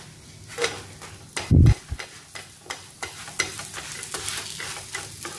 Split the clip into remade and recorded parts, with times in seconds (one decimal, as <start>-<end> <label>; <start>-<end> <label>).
0.0-5.4 recorded